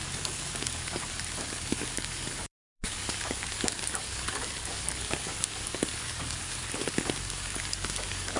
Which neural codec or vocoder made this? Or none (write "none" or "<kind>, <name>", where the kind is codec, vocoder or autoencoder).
codec, DAC